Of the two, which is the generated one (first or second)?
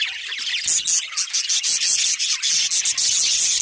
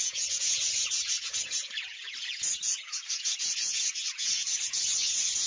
second